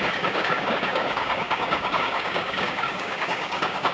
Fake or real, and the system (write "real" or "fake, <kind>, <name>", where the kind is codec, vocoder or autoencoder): fake, codec, DAC